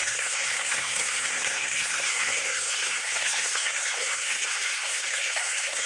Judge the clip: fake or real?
fake